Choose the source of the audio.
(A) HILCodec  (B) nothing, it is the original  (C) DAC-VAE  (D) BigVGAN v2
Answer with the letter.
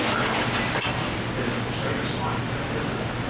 B